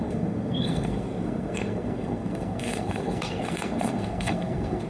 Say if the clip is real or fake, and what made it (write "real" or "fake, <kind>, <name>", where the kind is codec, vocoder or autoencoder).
fake, codec, SNAC